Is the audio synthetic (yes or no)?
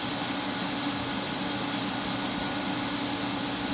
no